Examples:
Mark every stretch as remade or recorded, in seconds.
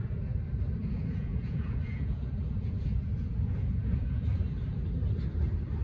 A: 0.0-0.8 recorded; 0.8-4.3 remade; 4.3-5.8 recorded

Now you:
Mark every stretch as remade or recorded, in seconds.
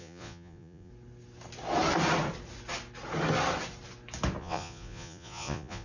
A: 0.0-0.9 remade; 0.9-4.4 recorded; 4.4-5.8 remade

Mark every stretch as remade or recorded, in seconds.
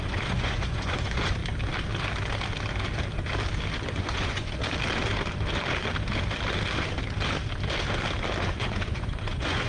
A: 0.0-1.4 remade; 1.4-3.9 recorded; 3.9-4.6 remade; 4.6-8.4 recorded; 8.4-9.7 remade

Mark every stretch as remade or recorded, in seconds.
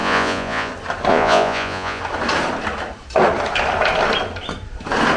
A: 0.0-0.7 remade; 0.7-1.1 recorded; 1.1-2.0 remade; 2.0-5.2 recorded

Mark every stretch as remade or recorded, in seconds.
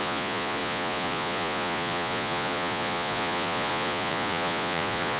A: 0.0-5.2 remade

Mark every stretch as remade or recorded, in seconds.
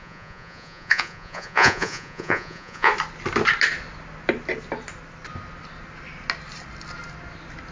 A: 0.0-2.9 remade; 2.9-7.7 recorded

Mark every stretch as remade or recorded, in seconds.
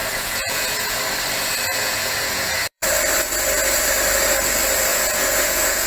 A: 0.0-1.0 remade; 1.0-1.7 recorded; 1.7-2.9 remade; 2.9-4.9 recorded; 4.9-5.9 remade